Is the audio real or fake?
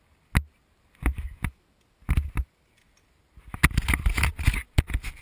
real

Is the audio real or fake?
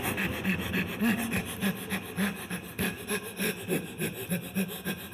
real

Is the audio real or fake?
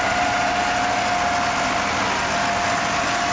real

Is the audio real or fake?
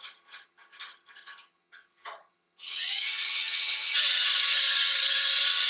fake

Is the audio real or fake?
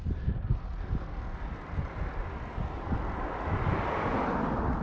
real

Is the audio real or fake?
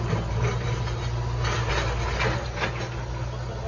real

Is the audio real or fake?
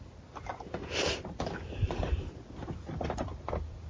fake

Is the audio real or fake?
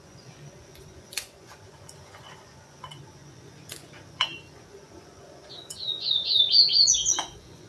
fake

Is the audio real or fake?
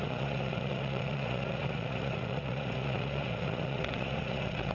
fake